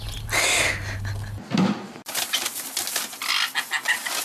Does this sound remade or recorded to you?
recorded